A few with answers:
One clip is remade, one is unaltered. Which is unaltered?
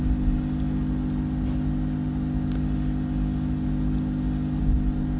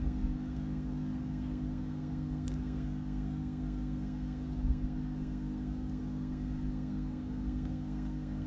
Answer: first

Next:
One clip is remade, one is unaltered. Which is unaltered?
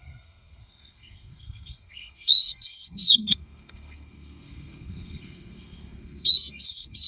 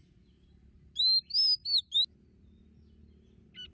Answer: second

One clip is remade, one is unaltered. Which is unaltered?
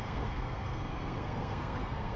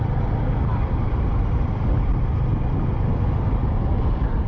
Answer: second